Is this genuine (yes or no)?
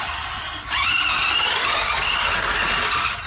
yes